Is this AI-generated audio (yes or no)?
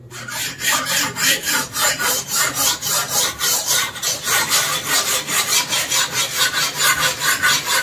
yes